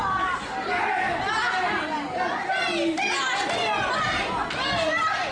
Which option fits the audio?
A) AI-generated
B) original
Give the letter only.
B